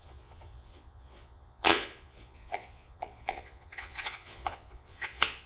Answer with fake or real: fake